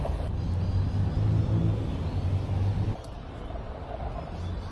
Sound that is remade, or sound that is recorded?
recorded